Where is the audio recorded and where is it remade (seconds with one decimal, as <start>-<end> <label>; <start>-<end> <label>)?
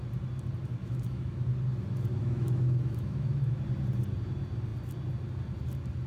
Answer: 0.0-0.8 recorded; 0.8-1.5 remade; 1.5-2.1 recorded; 2.1-3.6 remade; 3.6-6.1 recorded